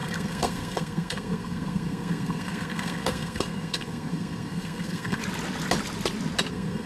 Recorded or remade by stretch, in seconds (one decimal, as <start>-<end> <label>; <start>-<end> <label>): 0.0-5.2 remade; 5.2-6.5 recorded; 6.5-6.9 remade